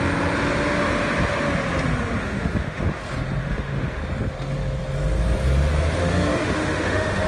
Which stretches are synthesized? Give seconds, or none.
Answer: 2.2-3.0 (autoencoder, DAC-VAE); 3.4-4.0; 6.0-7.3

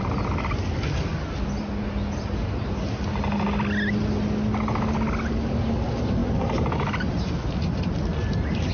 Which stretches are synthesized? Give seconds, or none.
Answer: none

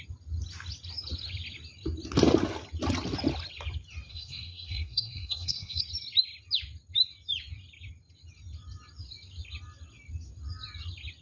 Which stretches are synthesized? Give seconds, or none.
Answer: 4.1-5.8 (codec, SNAC)

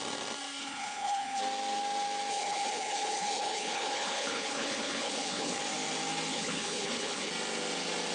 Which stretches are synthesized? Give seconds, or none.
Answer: 0.6-1.4 (codec, HILCodec); 2.3-5.6; 6.3-7.3

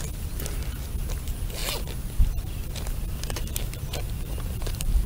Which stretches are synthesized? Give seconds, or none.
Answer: 1.6-5.1 (vocoder, BigVGAN v2)

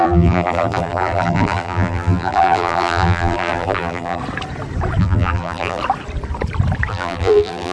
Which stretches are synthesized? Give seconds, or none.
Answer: 0.0-4.2 (vocoder, BigVGAN v2); 5.0-5.8; 6.9-7.7

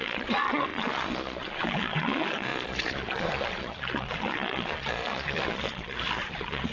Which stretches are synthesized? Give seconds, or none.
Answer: 0.0-6.7 (vocoder, Vocos)

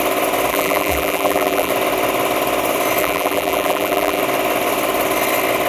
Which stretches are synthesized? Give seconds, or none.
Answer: 0.5-1.7 (vocoder, BigVGAN v2); 3.0-4.2